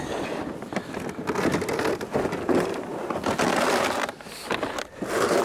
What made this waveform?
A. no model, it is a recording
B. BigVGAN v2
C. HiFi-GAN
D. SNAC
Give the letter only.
B